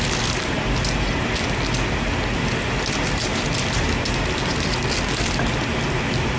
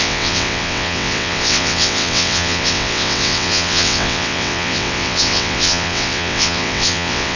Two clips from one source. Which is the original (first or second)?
first